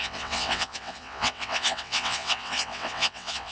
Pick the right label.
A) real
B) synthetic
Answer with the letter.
B